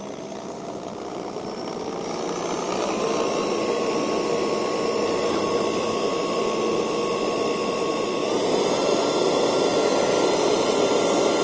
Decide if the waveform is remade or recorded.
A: recorded